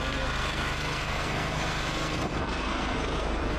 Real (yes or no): no